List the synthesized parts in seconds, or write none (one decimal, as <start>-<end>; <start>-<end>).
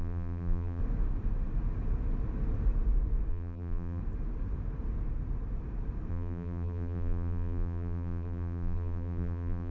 0.0-0.8; 3.3-4.0; 6.1-9.7